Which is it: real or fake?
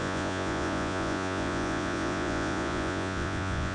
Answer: fake